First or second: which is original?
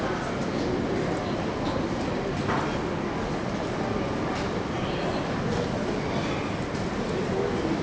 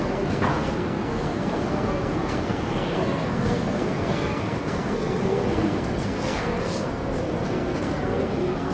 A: first